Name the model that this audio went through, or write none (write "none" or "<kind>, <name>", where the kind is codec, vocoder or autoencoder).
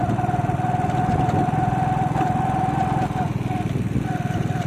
none